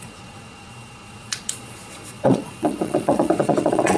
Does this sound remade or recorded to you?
remade